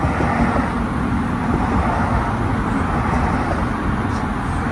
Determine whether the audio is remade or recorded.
recorded